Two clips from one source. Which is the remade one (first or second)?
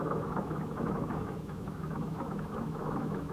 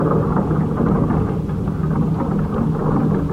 first